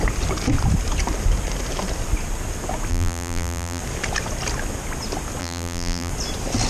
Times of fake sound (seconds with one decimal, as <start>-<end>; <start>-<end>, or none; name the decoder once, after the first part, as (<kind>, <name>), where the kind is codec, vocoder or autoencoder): 2.9-3.8 (vocoder, BigVGAN v2); 5.4-6.1